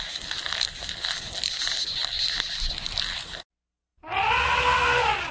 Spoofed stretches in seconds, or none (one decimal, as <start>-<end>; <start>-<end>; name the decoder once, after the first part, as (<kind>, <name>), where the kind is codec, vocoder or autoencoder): none